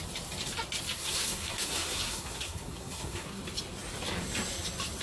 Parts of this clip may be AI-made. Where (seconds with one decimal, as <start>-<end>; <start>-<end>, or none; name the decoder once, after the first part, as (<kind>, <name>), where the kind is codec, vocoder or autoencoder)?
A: 0.9-3.4 (codec, SNAC)